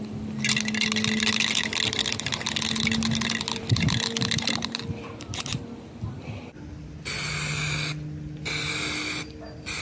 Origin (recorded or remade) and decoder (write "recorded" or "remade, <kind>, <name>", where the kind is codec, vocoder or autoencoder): recorded